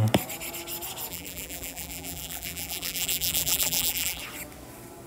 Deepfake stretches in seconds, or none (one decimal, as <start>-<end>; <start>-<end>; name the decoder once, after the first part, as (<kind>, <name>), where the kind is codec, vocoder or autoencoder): 1.1-4.2 (vocoder, BigVGAN v2)